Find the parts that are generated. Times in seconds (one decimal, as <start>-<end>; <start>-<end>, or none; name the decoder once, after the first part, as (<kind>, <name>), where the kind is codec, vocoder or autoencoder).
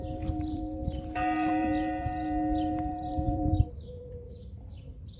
0.0-5.2 (vocoder, BigVGAN v2)